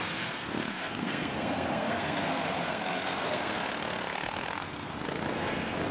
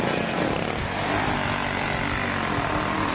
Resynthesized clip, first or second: first